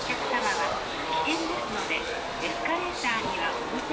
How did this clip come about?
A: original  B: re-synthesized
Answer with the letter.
A